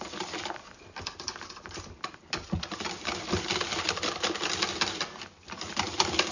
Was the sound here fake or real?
real